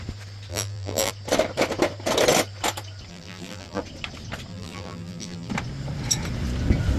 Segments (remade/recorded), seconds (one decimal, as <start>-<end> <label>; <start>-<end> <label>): 0.0-0.5 recorded; 0.5-1.1 remade; 1.1-3.1 recorded; 3.1-3.8 remade; 3.8-4.5 recorded; 4.5-5.5 remade; 5.5-7.0 recorded